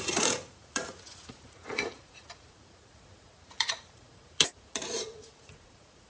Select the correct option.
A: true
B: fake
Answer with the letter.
B